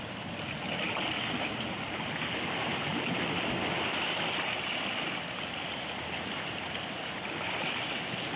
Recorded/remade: recorded